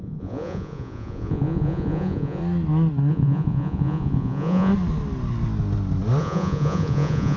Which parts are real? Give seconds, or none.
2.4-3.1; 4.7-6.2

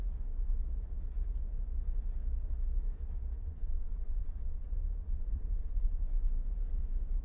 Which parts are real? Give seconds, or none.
0.0-3.4; 6.0-7.2